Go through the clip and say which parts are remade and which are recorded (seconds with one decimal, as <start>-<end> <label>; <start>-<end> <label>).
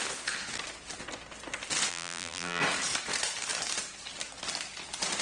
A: 0.0-1.9 recorded; 1.9-2.6 remade; 2.6-5.2 recorded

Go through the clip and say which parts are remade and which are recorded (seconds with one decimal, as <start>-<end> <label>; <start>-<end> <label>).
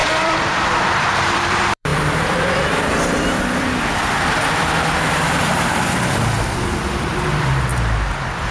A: 0.0-7.7 remade; 7.7-8.5 recorded